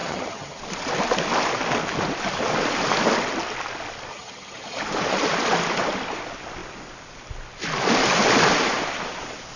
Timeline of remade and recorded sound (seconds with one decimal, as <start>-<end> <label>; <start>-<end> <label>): 0.0-0.6 remade; 0.6-4.1 recorded; 4.1-4.8 remade; 4.8-9.6 recorded